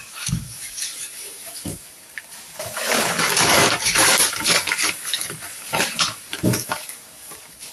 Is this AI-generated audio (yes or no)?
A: yes